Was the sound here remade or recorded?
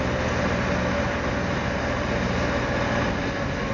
recorded